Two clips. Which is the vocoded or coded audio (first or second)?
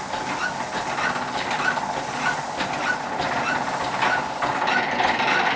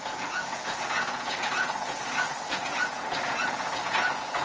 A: second